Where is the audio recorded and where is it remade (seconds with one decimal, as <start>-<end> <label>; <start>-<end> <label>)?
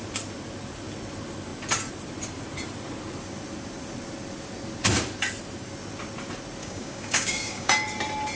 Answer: 0.0-6.6 recorded; 6.6-7.7 remade; 7.7-8.4 recorded